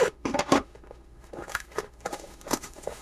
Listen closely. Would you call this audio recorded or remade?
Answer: remade